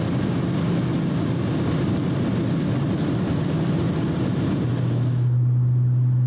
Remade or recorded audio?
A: recorded